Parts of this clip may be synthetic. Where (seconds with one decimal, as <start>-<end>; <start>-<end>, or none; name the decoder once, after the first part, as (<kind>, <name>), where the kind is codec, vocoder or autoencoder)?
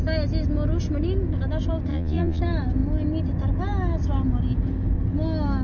1.9-2.4 (vocoder, Vocos)